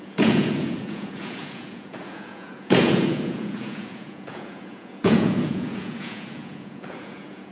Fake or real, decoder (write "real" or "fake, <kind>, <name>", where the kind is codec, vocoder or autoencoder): fake, vocoder, Vocos